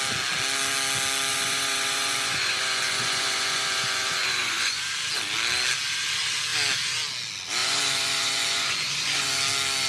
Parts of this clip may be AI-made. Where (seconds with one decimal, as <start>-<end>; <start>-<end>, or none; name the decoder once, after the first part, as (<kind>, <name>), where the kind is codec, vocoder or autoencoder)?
1.3-4.8 (vocoder, Vocos); 7.6-9.3